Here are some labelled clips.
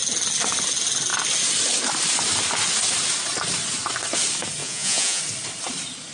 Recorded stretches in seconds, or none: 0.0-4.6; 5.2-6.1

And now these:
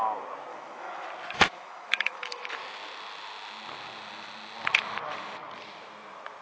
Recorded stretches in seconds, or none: 0.0-0.5; 1.1-1.5; 2.6-6.4

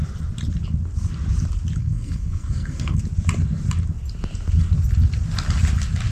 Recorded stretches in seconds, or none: 0.0-1.8; 3.0-6.1

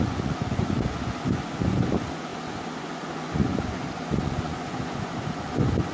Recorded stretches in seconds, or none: none

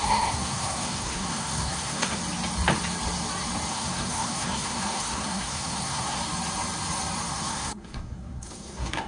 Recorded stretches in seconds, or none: 2.2-3.7; 6.2-7.3

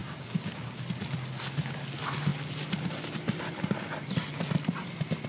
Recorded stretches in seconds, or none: 0.8-5.3